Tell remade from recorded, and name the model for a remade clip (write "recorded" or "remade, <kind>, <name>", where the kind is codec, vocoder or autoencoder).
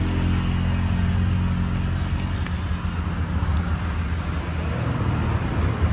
recorded